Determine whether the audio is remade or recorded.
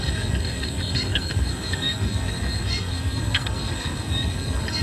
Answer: remade